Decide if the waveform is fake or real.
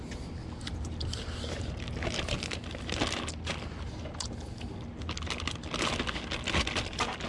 real